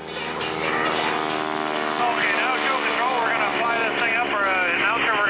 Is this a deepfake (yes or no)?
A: no